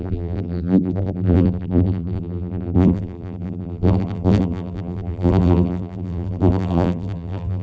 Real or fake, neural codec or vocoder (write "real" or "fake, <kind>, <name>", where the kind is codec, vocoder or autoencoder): fake, vocoder, BigVGAN v2